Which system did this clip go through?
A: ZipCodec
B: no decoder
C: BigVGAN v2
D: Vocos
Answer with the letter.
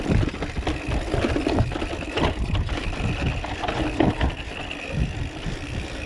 B